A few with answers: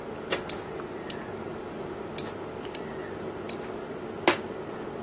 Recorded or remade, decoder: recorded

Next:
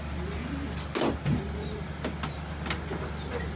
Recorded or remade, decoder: recorded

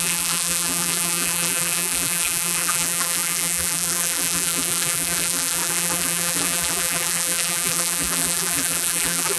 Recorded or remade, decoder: remade, vocoder, BigVGAN v2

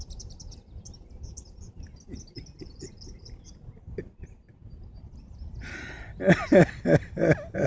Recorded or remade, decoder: recorded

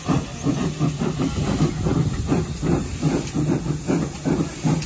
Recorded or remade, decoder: recorded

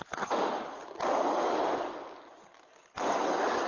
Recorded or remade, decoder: recorded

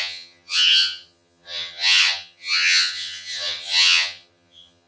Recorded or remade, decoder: remade, vocoder, HiFi-GAN